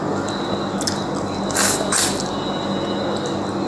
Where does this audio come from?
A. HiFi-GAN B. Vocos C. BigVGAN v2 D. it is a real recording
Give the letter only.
D